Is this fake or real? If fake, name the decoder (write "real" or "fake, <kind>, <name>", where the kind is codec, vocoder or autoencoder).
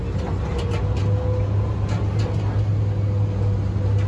real